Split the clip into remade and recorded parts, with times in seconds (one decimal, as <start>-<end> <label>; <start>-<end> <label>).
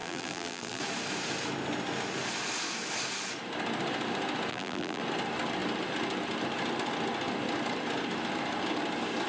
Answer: 0.0-0.8 remade; 0.8-4.5 recorded; 4.5-5.0 remade; 5.0-9.3 recorded